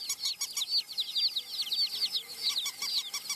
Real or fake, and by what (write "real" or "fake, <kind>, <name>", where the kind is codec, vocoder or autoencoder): real